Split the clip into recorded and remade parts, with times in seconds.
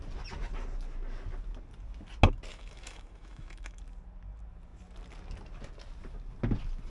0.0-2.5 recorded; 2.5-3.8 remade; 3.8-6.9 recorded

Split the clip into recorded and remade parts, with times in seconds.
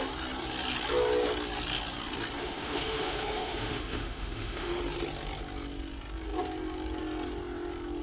0.0-2.4 recorded; 2.4-4.8 remade; 4.8-8.0 recorded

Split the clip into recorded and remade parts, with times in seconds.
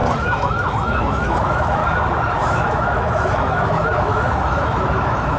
0.0-1.8 remade; 1.8-2.4 recorded; 2.4-5.4 remade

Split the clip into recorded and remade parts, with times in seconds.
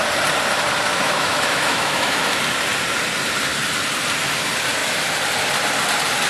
0.0-0.9 recorded; 0.9-2.2 remade; 2.2-6.3 recorded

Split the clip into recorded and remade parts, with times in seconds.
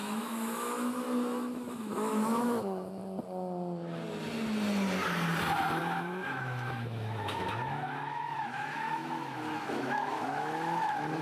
0.0-3.0 remade; 3.0-5.8 recorded; 5.8-11.2 remade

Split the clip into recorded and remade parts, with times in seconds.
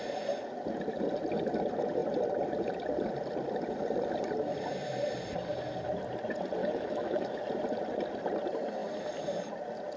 0.0-6.6 recorded; 6.6-7.4 remade; 7.4-10.0 recorded